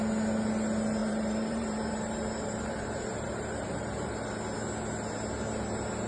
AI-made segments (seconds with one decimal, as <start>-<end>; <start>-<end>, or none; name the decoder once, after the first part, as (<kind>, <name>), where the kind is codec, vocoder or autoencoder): 1.0-4.3 (vocoder, BigVGAN v2)